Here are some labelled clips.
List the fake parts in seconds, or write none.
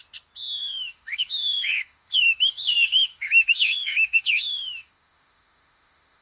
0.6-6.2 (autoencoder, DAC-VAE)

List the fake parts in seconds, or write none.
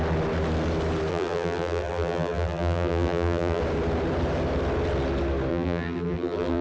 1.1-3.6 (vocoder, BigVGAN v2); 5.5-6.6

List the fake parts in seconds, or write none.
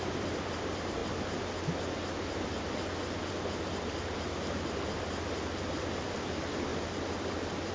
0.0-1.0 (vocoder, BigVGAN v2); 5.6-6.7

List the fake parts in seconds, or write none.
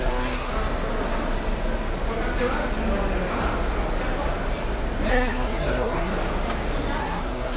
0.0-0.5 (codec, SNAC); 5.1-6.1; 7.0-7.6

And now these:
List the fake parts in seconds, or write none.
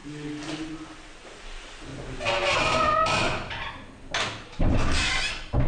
none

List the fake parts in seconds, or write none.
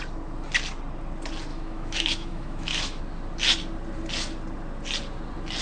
1.5-3.0 (autoencoder, DAC-VAE)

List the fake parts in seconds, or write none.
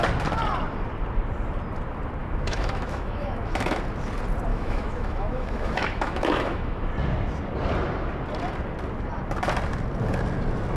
2.2-3.8 (autoencoder, DAC-VAE); 4.5-6.9